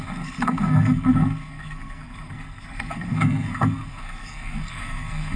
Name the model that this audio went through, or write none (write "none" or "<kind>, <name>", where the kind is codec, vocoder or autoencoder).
codec, SNAC